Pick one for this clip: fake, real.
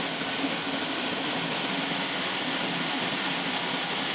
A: real